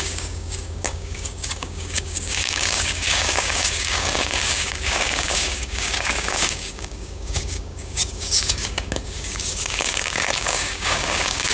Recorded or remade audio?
remade